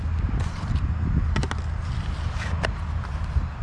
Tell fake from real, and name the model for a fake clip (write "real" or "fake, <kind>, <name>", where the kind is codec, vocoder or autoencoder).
real